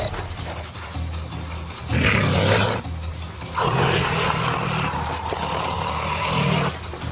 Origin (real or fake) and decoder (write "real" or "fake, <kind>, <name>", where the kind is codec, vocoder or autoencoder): real